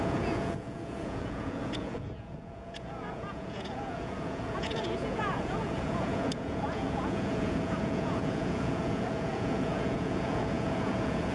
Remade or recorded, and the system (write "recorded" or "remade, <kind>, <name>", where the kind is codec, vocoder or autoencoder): remade, vocoder, Vocos